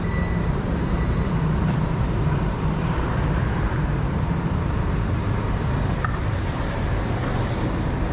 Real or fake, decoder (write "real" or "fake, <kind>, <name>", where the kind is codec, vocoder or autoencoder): fake, vocoder, BigVGAN v2